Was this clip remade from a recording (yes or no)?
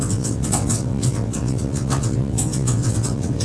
yes